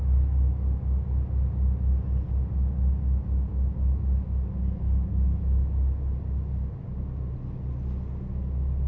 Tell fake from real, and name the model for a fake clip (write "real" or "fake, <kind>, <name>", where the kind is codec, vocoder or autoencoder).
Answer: real